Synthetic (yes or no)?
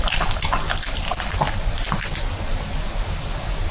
no